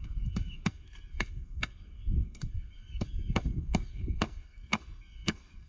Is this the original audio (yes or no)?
no